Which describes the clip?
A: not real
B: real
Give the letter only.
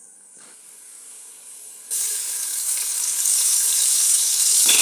A